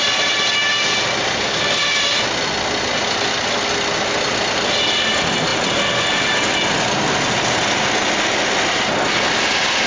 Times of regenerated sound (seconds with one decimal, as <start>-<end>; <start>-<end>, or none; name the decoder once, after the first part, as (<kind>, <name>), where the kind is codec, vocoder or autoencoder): none

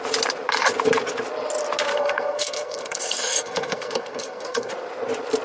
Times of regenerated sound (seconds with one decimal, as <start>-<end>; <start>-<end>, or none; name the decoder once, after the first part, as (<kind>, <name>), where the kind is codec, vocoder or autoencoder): 1.9-4.7 (codec, SNAC)